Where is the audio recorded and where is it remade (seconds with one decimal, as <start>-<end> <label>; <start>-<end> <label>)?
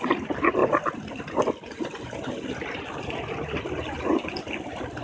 0.0-5.0 recorded